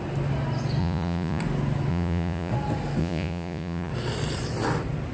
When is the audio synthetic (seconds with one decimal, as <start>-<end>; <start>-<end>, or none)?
0.8-1.4; 1.9-2.5; 3.0-3.9